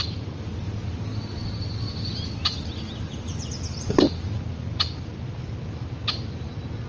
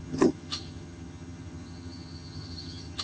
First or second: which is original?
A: first